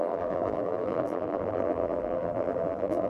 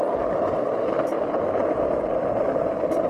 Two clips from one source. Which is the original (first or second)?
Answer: second